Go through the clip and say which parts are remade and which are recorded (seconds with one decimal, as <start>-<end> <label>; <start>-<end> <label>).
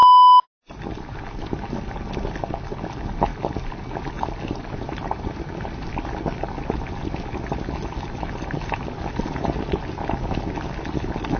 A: 0.0-11.4 recorded